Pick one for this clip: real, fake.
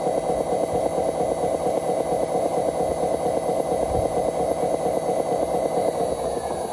real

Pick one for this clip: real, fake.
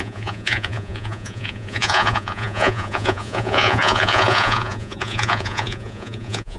fake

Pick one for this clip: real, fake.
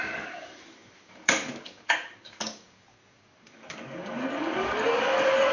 fake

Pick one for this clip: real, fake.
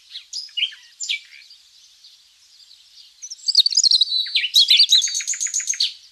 real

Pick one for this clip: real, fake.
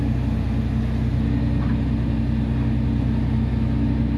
real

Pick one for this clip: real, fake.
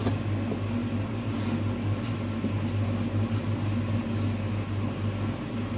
real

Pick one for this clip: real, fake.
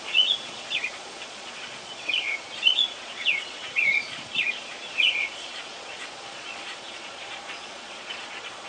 fake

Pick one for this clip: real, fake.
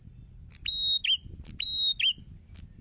real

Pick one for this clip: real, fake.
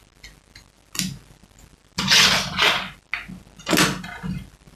real